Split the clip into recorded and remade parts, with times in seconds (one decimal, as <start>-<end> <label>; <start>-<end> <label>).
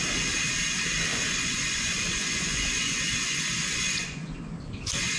0.0-1.1 recorded; 1.1-4.2 remade; 4.2-5.2 recorded